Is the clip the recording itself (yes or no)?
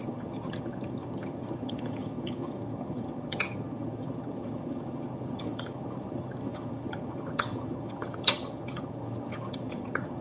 no